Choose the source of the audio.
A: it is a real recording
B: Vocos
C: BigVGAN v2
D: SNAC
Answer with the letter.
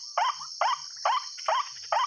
A